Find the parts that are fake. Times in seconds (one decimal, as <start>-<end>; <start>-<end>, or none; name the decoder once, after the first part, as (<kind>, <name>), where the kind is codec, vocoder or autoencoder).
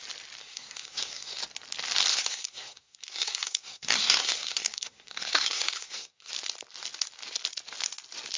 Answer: 0.4-1.4 (codec, SNAC); 2.1-6.3